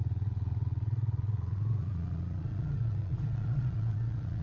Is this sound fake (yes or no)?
yes